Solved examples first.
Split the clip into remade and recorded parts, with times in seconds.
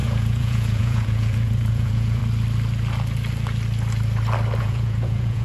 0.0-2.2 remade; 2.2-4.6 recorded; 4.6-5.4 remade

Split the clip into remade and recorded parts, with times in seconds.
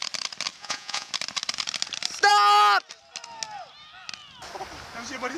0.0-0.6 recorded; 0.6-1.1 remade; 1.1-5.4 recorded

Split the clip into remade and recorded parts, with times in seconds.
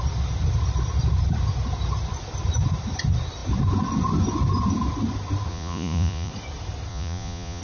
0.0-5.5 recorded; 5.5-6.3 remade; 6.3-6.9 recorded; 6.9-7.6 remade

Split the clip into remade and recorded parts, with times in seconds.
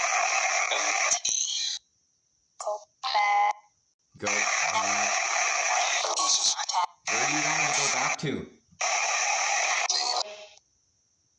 0.0-6.5 recorded; 6.5-8.6 remade; 8.6-11.4 recorded